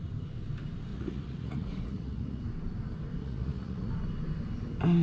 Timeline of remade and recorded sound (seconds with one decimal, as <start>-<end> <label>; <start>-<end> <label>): 0.0-0.9 recorded; 0.9-2.4 remade; 2.4-3.2 recorded; 3.2-3.9 remade; 3.9-5.0 recorded